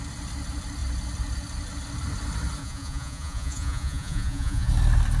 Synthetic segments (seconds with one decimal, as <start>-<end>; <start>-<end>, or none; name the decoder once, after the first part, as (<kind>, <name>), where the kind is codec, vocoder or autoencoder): 2.6-4.7 (vocoder, Vocos)